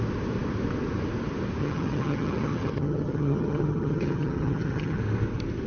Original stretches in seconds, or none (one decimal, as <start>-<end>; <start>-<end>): 0.0-1.6; 5.0-5.7